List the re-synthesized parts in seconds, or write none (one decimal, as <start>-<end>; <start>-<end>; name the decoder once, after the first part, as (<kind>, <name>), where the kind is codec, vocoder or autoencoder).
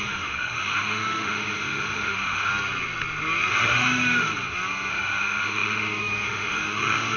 0.0-2.5 (autoencoder, DAC-VAE); 3.5-4.3; 4.9-7.2